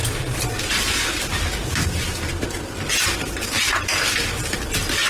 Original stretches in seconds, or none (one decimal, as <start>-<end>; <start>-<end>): 0.0-5.1